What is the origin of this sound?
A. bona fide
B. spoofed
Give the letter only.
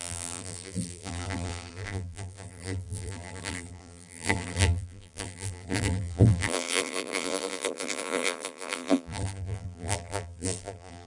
B